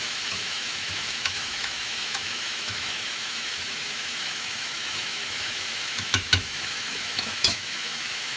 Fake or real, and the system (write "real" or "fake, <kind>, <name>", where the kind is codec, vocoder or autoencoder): fake, autoencoder, DAC-VAE